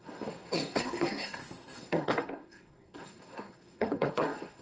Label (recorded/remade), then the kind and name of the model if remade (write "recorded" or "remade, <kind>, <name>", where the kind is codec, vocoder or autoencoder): remade, codec, SNAC